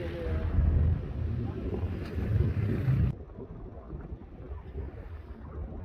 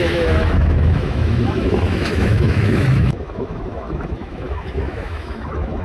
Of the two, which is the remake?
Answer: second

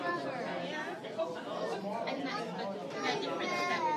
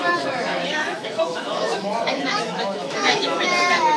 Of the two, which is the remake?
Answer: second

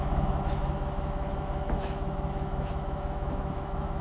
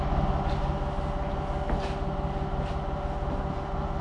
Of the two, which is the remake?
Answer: first